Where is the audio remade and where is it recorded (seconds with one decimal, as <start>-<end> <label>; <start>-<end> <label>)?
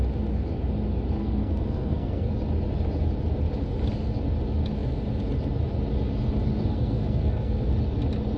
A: 0.0-1.2 recorded; 1.2-2.3 remade; 2.3-6.7 recorded; 6.7-7.7 remade; 7.7-8.4 recorded